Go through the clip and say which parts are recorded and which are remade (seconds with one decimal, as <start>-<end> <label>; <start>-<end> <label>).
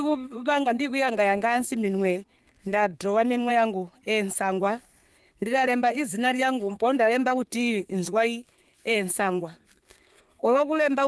0.0-3.5 remade; 3.5-4.6 recorded; 4.6-11.1 remade